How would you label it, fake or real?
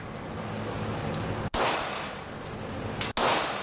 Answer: real